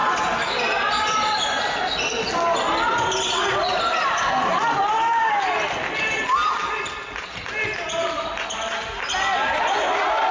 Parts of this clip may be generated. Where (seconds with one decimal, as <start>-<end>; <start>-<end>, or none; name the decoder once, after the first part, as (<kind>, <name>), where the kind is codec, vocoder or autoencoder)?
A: none